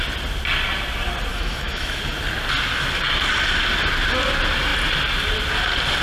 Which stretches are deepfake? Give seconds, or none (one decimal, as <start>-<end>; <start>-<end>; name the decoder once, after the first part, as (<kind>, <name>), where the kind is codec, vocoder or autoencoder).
1.3-2.0 (autoencoder, DAC-VAE)